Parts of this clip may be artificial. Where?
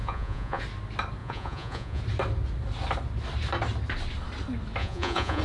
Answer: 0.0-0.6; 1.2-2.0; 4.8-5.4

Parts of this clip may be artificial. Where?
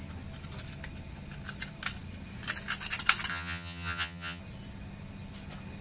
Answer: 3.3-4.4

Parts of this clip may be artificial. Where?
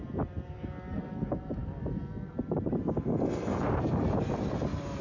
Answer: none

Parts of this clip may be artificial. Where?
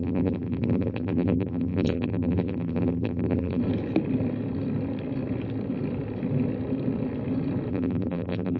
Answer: 0.0-3.6; 7.7-8.6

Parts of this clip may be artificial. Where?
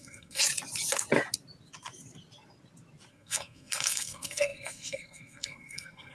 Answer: 0.0-0.4; 3.1-6.1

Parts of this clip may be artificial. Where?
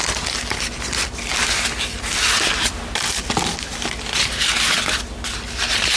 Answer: none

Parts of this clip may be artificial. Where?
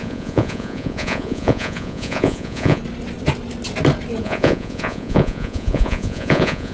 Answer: 0.0-2.8; 4.2-6.7